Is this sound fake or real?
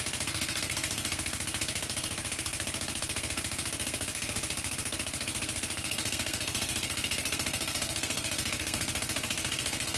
fake